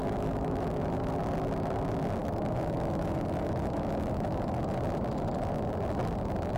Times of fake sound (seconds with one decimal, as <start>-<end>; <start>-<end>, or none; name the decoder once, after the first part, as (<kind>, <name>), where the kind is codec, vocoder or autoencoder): 0.0-1.1 (autoencoder, DAC-VAE); 2.2-4.6